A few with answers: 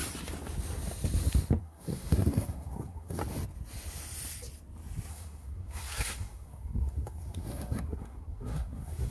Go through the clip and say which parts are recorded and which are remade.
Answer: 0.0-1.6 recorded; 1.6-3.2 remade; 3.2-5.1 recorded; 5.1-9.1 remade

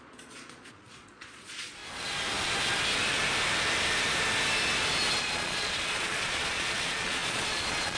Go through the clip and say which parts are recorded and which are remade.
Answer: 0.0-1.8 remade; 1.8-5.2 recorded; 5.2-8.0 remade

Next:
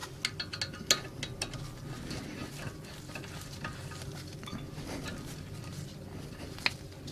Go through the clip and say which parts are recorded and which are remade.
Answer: 0.0-7.1 recorded

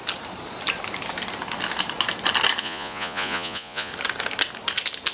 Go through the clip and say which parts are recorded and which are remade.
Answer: 0.0-2.6 recorded; 2.6-3.9 remade; 3.9-5.1 recorded

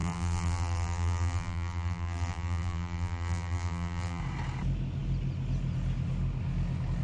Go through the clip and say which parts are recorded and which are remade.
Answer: 0.0-4.2 remade; 4.2-7.0 recorded